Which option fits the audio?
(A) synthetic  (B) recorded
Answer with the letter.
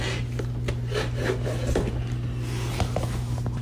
B